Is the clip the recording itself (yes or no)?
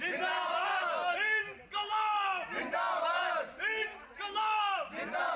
yes